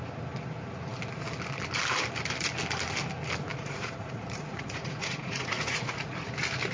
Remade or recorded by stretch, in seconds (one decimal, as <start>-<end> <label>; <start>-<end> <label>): 0.0-3.5 recorded; 3.5-6.3 remade; 6.3-6.7 recorded